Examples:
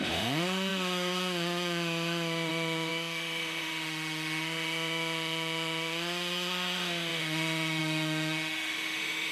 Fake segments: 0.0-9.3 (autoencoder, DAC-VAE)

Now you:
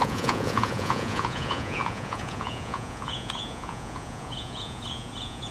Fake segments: 0.0-5.5 (vocoder, Vocos)

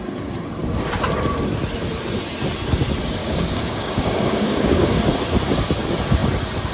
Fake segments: 3.2-5.0 (codec, DAC)

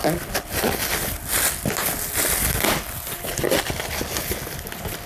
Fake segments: none

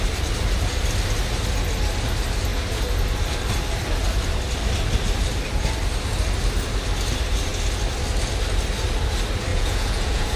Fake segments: 9.5-10.4 (vocoder, Vocos)

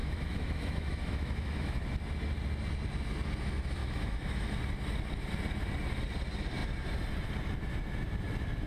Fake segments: 0.0-1.8 (autoencoder, DAC-VAE); 3.8-4.5

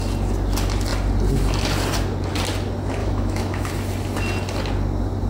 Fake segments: 3.0-3.7 (autoencoder, DAC-VAE)